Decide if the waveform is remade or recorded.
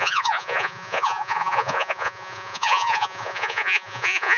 remade